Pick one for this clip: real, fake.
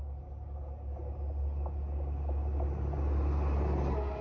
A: real